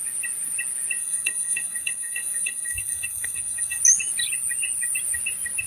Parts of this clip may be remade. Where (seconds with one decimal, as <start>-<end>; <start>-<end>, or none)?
1.0-3.8